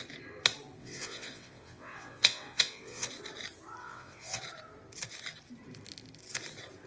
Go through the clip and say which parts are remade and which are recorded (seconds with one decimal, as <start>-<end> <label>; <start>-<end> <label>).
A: 0.0-0.8 recorded; 0.8-3.1 remade; 3.1-3.8 recorded; 3.8-4.4 remade; 4.4-6.9 recorded